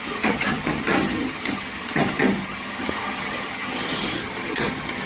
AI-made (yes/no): yes